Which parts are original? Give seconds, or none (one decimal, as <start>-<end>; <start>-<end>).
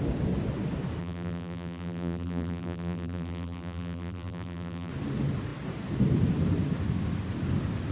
0.0-1.0; 4.9-7.9